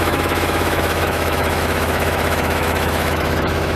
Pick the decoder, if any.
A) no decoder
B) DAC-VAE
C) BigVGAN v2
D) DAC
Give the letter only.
B